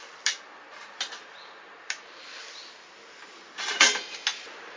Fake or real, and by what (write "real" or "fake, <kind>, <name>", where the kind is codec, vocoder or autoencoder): real